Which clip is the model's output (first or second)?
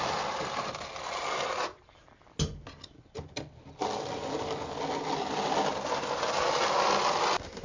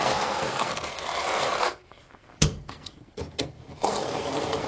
second